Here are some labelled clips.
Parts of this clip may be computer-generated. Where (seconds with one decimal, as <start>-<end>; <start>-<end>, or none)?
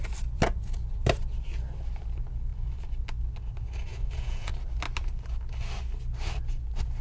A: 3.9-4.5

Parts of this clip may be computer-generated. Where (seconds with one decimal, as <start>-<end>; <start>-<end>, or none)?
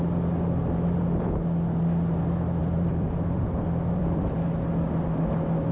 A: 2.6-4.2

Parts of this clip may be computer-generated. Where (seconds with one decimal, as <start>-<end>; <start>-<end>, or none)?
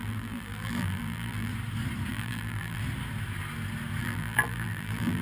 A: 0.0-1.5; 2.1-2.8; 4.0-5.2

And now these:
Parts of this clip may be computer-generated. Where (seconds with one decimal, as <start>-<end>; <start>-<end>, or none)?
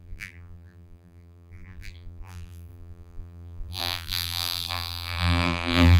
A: 0.0-6.0